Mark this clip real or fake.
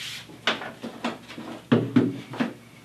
real